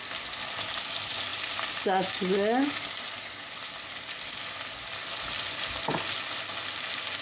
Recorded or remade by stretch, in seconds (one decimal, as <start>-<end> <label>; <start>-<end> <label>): 0.0-7.2 recorded